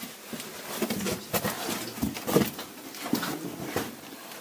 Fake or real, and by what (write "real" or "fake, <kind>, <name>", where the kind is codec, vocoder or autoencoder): real